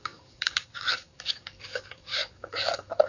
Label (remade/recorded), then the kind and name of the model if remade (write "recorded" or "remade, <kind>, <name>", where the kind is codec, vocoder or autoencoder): remade, codec, DAC